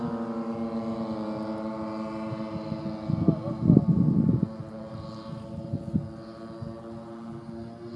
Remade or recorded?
recorded